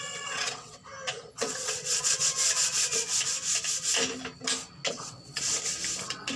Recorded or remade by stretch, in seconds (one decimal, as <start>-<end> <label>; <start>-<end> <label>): 0.0-0.8 remade; 0.8-1.3 recorded; 1.3-2.4 remade; 2.4-4.9 recorded; 4.9-5.4 remade; 5.4-6.0 recorded; 6.0-6.4 remade